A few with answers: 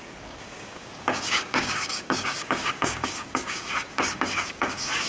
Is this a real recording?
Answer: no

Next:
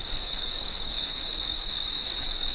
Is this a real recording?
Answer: no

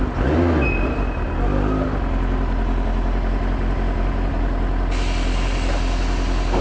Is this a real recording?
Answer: yes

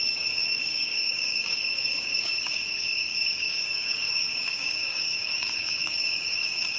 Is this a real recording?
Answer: no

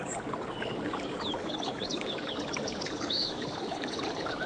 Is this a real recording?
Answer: no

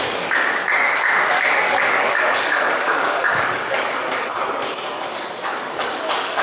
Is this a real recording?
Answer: no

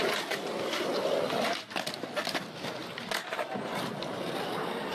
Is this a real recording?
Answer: yes